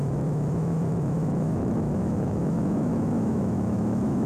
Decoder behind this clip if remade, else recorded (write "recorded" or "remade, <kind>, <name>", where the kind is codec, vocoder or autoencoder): remade, autoencoder, DAC-VAE